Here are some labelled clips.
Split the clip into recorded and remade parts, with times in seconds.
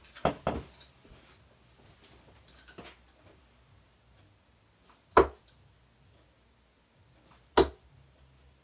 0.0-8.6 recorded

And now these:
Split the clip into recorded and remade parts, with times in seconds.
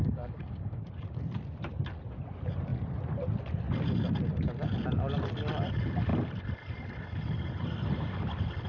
0.0-0.9 remade; 0.9-8.7 recorded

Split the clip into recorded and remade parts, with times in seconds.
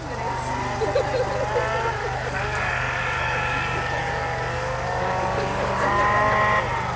0.0-2.0 recorded; 2.0-6.0 remade; 6.0-7.0 recorded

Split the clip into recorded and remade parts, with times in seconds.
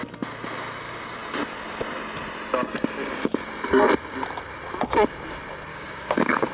0.0-5.7 recorded; 5.7-6.5 remade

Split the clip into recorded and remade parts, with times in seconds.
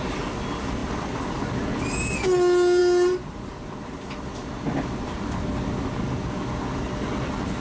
0.0-7.6 recorded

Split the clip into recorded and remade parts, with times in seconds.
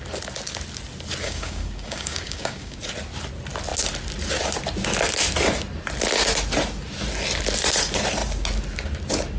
0.0-1.2 recorded; 1.2-2.8 remade; 2.8-9.4 recorded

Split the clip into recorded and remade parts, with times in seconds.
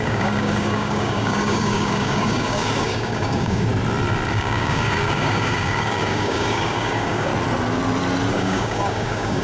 0.0-3.7 remade; 3.7-4.3 recorded; 4.3-7.3 remade; 7.3-8.3 recorded; 8.3-9.4 remade